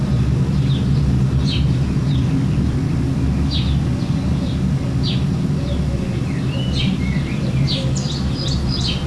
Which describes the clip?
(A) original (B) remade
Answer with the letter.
A